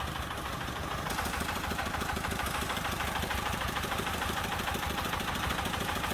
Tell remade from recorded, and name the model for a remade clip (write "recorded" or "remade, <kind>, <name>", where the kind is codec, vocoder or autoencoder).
remade, vocoder, BigVGAN v2